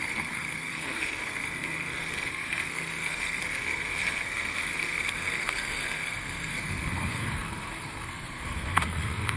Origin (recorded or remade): remade